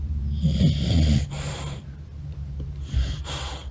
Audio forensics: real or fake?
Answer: fake